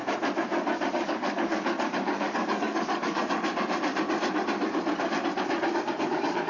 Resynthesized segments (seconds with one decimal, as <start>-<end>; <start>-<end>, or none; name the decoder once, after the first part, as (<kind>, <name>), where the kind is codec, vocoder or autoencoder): 0.9-3.2 (codec, DAC); 6.1-6.5